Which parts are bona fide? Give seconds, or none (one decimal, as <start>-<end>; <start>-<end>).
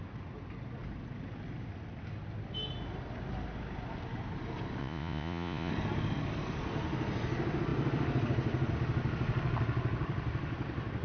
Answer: 0.0-4.8; 5.7-11.0